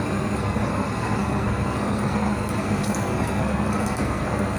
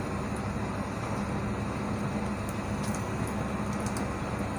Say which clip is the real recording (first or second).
second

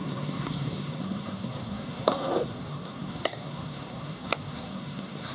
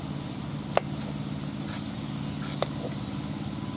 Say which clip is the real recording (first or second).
second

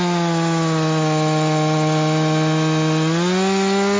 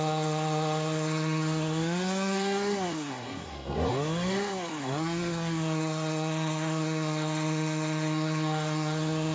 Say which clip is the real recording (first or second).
first